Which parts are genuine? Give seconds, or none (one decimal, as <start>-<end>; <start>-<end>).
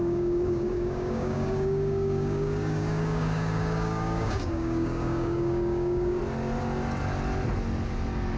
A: 6.2-8.4